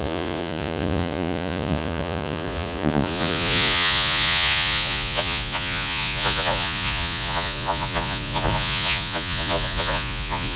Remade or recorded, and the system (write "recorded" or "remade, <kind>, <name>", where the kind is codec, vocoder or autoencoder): remade, vocoder, Vocos